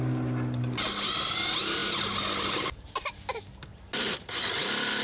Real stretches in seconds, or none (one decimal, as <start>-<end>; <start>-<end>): 0.0-5.0